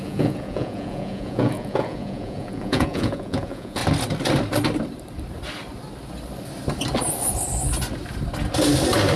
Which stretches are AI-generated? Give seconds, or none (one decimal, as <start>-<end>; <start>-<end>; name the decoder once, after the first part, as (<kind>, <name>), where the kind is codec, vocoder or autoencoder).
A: 0.0-3.8 (vocoder, Vocos)